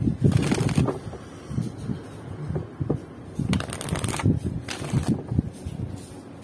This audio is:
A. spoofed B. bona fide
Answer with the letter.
B